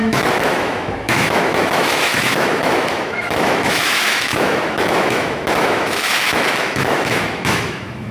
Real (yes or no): no